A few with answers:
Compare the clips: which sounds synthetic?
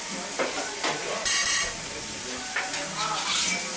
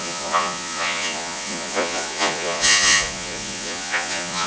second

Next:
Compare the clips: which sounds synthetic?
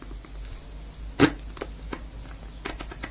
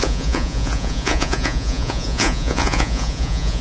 second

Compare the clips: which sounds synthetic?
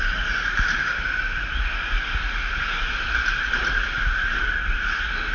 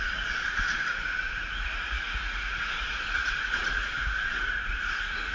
second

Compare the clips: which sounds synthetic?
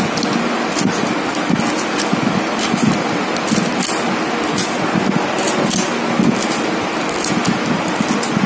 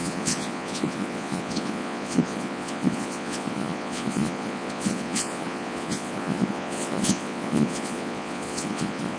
second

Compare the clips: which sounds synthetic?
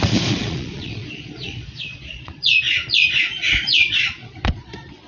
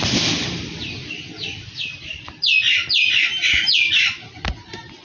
first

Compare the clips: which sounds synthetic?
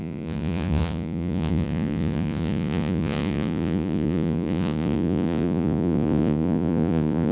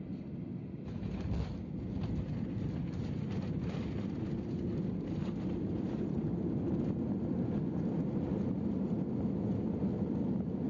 first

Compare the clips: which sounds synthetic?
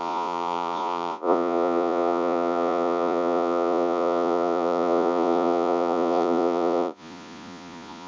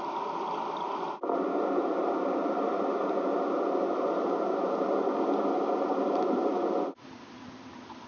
first